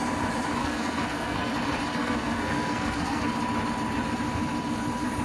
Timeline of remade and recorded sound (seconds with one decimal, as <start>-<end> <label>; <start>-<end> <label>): 0.0-0.6 recorded; 0.6-1.5 remade; 1.5-1.9 recorded; 1.9-3.2 remade; 3.2-5.2 recorded

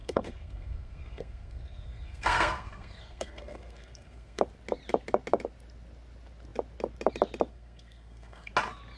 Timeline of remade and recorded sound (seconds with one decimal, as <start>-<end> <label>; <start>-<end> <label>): 0.0-4.4 remade; 4.4-7.5 recorded; 7.5-8.5 remade; 8.5-9.0 recorded

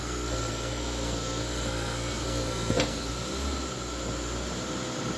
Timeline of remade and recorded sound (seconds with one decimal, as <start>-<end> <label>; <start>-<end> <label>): 0.0-3.1 remade; 3.1-5.2 recorded

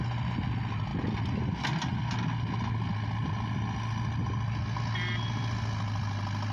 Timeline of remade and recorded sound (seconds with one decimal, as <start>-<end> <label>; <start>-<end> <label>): 0.0-6.5 recorded

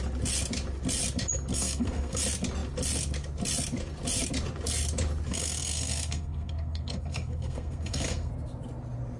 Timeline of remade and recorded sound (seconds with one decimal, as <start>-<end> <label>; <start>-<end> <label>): 0.0-1.5 recorded; 1.5-2.2 remade; 2.2-5.3 recorded; 5.3-8.3 remade; 8.3-9.2 recorded

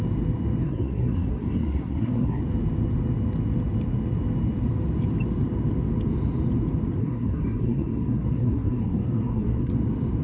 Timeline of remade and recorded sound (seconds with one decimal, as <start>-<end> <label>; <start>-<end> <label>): 0.0-0.6 recorded; 0.6-2.4 remade; 2.4-7.0 recorded; 7.0-9.7 remade; 9.7-10.2 recorded